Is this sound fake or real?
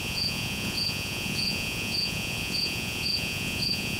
fake